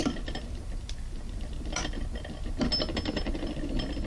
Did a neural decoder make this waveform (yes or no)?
no